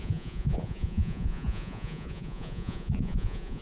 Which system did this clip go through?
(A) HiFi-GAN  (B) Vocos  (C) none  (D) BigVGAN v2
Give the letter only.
B